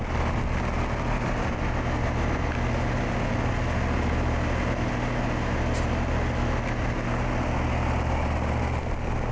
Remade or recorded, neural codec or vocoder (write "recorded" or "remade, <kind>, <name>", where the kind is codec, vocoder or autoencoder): recorded